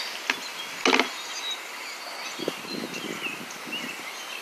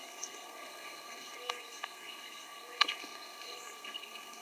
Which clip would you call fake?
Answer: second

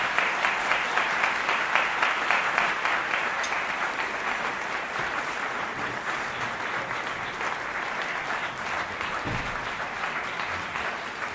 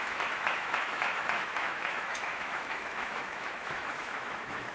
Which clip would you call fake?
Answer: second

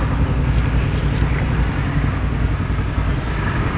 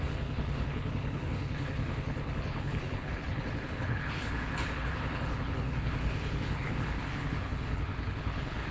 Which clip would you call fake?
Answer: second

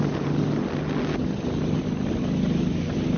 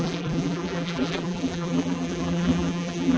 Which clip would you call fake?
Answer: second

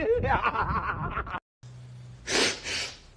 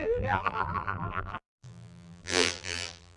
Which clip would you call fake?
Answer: second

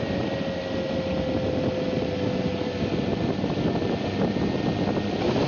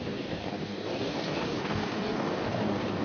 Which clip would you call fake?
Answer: second